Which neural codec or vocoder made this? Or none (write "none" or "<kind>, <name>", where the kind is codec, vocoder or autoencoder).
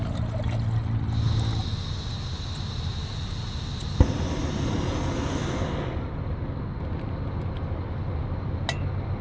none